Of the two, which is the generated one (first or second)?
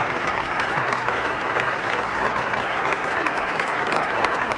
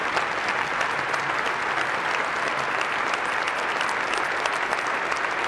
first